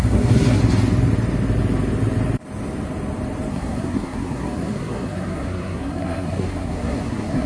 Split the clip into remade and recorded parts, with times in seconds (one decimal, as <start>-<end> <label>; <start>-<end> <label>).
0.0-0.6 remade; 0.6-3.5 recorded; 3.5-7.5 remade